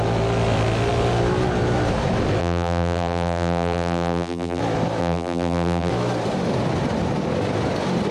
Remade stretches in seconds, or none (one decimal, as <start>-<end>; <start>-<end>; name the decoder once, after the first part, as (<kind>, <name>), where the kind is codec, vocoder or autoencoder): 2.4-4.6 (vocoder, BigVGAN v2); 5.0-5.9